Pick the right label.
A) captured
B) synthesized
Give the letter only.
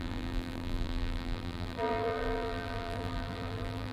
B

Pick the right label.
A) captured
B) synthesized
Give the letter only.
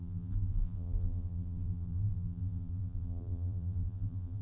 B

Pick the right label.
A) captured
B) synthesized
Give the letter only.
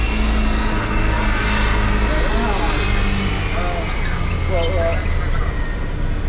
A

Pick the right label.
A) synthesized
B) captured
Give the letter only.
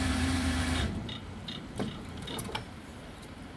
A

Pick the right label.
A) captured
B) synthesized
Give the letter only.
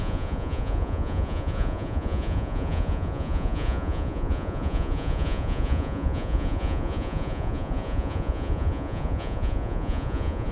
B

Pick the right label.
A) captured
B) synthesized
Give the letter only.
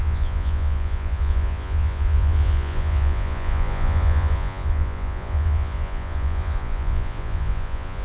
B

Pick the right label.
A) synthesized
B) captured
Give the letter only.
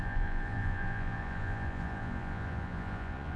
A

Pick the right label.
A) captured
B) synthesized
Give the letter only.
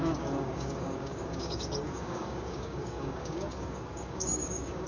B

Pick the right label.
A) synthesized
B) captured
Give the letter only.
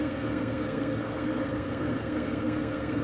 A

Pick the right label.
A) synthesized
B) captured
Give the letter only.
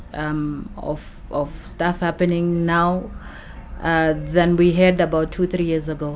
B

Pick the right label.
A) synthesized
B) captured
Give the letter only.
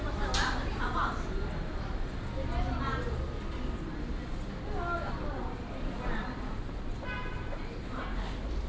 B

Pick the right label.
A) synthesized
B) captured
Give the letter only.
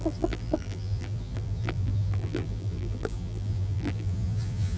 A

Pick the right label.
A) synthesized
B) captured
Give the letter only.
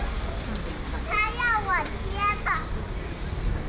B